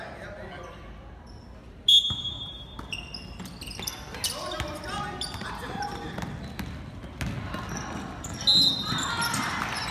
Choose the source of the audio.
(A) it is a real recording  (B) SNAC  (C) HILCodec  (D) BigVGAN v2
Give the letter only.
A